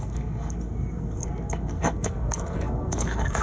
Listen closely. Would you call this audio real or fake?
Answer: fake